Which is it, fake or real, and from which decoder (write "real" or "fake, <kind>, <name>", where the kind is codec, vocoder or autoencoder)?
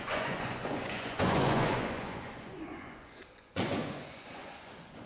fake, vocoder, Vocos